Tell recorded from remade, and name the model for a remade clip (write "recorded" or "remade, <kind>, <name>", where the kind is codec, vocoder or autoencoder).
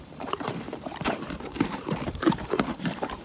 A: remade, vocoder, BigVGAN v2